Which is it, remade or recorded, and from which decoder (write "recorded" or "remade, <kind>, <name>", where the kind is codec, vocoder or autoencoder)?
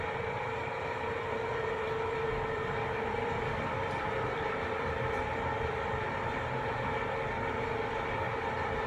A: remade, vocoder, BigVGAN v2